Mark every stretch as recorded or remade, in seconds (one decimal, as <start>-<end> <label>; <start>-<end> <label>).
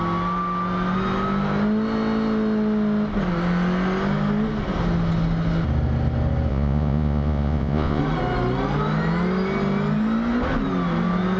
0.0-6.5 recorded; 6.5-8.0 remade; 8.0-11.4 recorded